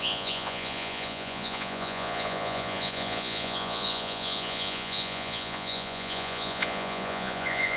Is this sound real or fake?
fake